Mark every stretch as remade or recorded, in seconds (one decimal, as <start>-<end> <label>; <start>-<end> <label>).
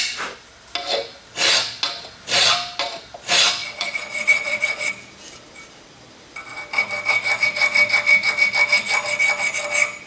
0.0-3.6 recorded; 3.6-4.9 remade; 4.9-10.1 recorded